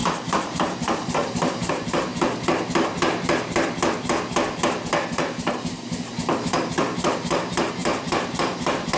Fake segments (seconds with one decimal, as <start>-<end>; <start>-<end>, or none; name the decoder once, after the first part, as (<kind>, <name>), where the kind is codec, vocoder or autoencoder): 0.0-2.1 (vocoder, BigVGAN v2); 6.7-9.0